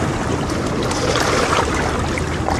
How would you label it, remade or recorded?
remade